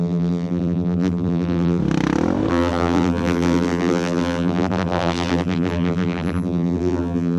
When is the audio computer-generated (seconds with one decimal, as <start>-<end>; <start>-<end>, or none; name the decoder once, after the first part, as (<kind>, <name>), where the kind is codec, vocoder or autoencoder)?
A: 0.0-1.8 (vocoder, BigVGAN v2); 2.5-7.4